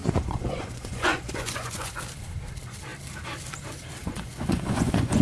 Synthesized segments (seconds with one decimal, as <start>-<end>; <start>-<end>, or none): 0.0-2.0; 4.0-5.2